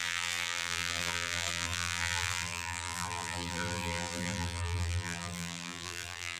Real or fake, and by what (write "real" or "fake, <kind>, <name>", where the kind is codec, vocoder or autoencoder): fake, vocoder, BigVGAN v2